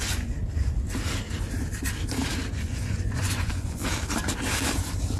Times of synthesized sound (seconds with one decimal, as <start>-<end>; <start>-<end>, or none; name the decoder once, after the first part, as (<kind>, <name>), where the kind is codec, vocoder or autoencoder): 0.0-0.4 (vocoder, Vocos); 2.5-3.8